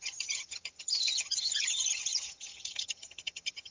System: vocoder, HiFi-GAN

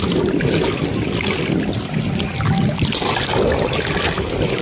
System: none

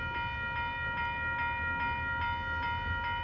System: none